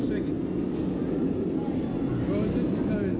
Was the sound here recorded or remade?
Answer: recorded